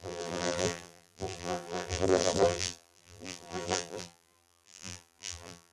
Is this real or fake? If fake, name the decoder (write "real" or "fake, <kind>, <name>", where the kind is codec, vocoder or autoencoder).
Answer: fake, vocoder, BigVGAN v2